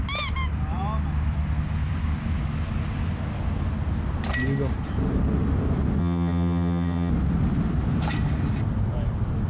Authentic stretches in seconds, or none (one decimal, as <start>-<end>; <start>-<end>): 0.0-6.0; 7.1-9.5